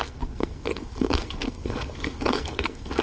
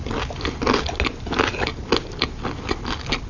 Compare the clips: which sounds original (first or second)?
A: second